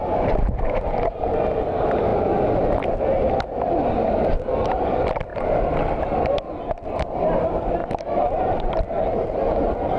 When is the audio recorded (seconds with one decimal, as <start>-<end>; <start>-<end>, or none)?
0.0-10.0